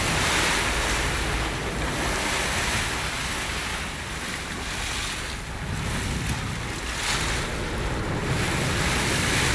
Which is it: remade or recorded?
recorded